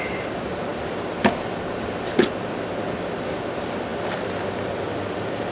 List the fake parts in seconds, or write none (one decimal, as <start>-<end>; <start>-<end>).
none